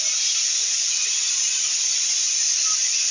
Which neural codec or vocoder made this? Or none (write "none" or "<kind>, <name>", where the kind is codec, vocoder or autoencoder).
none